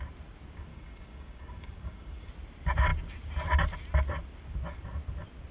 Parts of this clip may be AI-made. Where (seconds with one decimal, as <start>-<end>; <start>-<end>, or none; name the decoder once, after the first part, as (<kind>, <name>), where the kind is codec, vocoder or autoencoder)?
0.7-2.3 (codec, DAC)